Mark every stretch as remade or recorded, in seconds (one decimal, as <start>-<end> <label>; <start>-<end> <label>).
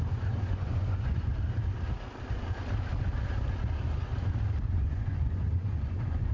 0.0-1.3 remade; 1.3-4.7 recorded; 4.7-6.3 remade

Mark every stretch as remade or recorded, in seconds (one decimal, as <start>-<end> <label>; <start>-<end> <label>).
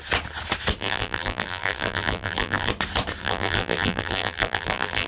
0.0-0.8 recorded; 0.8-2.7 remade; 2.7-3.2 recorded; 3.2-5.1 remade